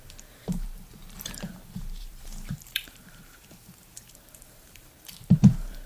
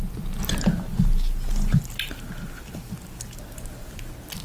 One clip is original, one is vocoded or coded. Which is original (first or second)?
second